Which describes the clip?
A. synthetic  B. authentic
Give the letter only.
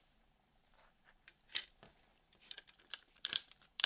A